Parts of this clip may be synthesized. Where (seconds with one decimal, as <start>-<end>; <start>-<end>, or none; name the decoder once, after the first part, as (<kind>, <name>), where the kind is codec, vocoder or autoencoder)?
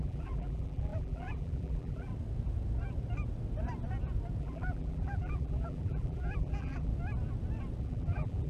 0.0-2.1 (vocoder, BigVGAN v2); 4.4-6.9; 7.8-8.5